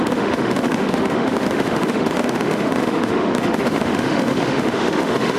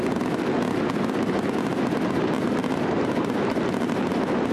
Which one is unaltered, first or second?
second